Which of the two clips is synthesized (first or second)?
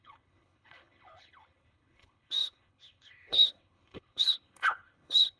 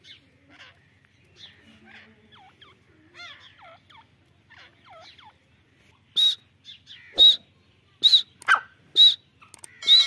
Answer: first